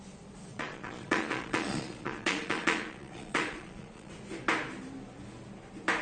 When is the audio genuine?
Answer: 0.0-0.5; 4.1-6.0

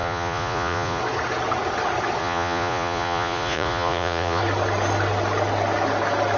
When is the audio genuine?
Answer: 1.0-2.2; 4.4-6.4

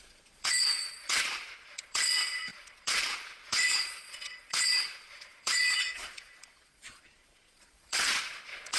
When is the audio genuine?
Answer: none

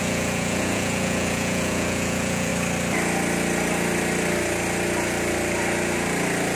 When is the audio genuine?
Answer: 2.5-6.6

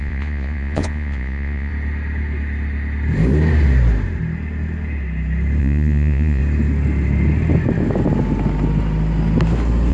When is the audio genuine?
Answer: 1.7-5.6; 6.4-9.9

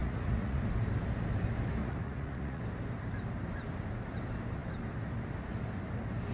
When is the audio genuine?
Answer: 0.6-1.8; 2.6-6.3